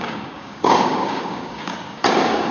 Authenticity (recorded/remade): remade